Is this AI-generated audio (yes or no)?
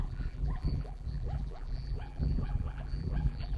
yes